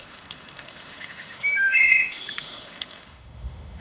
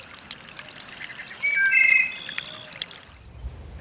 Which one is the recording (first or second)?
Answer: second